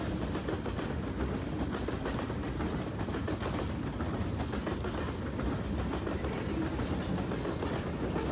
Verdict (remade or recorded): recorded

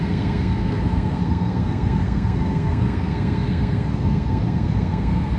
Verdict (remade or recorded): remade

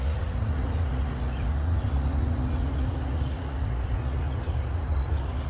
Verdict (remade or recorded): remade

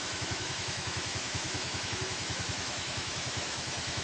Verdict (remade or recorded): remade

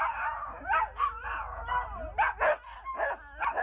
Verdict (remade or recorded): recorded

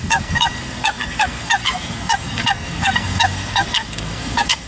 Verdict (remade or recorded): remade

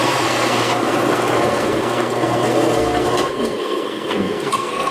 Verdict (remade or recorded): remade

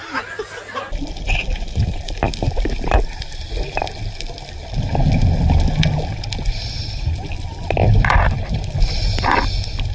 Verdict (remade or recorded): recorded